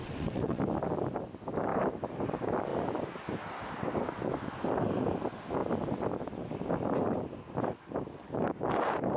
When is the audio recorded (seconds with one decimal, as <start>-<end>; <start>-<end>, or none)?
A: 0.6-9.2